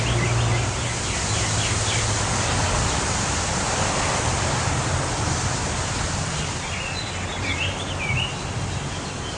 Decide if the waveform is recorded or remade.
recorded